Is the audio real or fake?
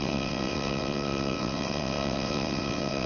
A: fake